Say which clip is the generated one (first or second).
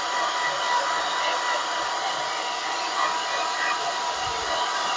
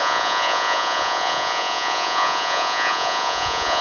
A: second